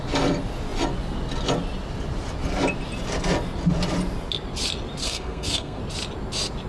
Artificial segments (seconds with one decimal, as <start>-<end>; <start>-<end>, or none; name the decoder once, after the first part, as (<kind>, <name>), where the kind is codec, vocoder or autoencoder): 5.0-5.8 (codec, SNAC)